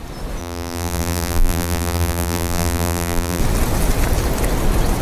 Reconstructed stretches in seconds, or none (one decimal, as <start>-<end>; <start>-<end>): 0.4-3.4